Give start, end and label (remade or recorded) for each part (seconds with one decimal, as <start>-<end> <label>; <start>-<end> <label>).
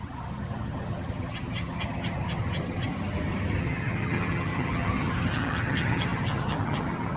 0.0-2.9 remade; 2.9-3.6 recorded; 3.6-7.2 remade